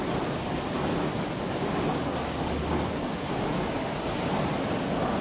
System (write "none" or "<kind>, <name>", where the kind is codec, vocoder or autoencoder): none